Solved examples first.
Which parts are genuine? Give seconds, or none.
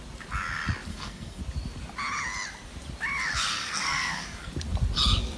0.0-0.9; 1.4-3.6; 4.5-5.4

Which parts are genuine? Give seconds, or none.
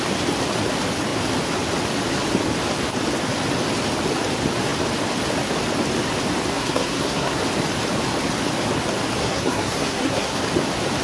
0.0-6.5; 7.4-9.2; 10.4-11.0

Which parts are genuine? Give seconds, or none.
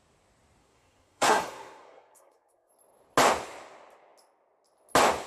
0.0-0.6; 2.7-5.3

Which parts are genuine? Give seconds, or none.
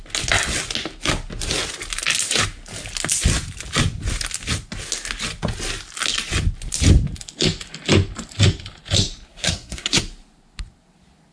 0.0-9.3; 10.0-11.3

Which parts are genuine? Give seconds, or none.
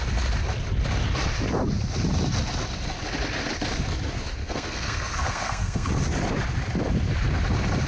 0.0-4.4; 5.9-7.9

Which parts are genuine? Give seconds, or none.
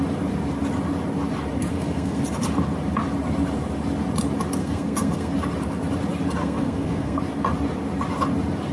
0.0-1.7; 2.2-4.6; 5.3-6.4; 7.2-8.7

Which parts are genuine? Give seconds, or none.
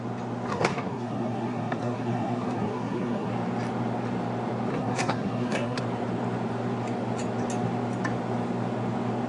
0.0-0.5; 3.3-4.7; 5.8-9.3